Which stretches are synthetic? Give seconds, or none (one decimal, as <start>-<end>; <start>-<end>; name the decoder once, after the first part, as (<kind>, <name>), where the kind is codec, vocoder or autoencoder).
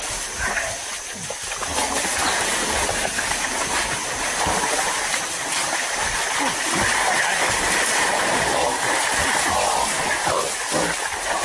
none